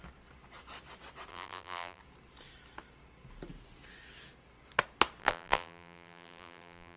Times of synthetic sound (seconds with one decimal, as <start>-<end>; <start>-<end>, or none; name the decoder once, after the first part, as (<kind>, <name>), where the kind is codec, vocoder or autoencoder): 1.3-2.0 (vocoder, BigVGAN v2); 5.2-7.0